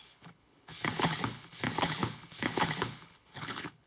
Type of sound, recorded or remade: remade